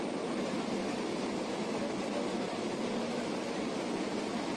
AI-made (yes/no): no